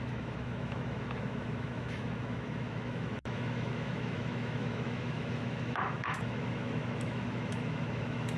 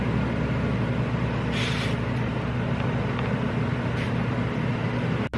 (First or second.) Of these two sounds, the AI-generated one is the first